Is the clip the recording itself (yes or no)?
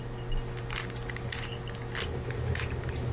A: yes